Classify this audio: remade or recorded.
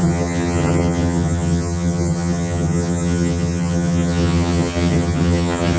remade